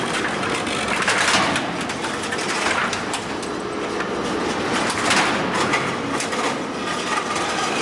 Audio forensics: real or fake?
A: real